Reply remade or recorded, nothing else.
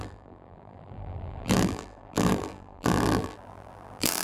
remade